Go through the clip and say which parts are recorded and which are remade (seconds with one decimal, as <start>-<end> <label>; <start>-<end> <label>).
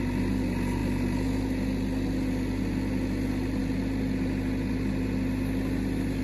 0.0-6.2 recorded